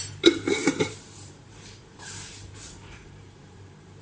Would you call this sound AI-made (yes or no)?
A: yes